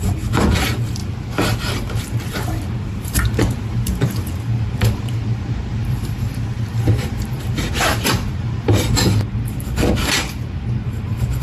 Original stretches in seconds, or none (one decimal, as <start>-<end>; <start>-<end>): 1.0-1.7